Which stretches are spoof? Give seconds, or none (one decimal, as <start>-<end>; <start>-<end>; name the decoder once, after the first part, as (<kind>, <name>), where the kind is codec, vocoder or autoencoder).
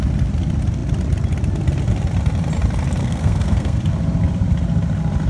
3.0-3.8 (codec, SNAC)